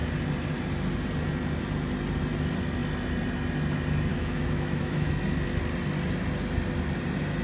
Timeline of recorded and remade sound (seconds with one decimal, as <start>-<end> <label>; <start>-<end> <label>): 0.0-4.1 recorded; 4.1-5.1 remade; 5.1-7.4 recorded

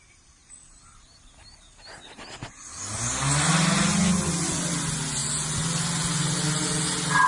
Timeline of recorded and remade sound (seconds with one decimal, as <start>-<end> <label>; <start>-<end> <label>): 0.0-7.3 recorded